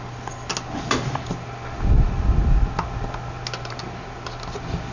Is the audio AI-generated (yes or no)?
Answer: no